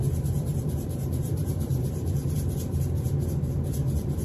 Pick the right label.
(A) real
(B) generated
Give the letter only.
B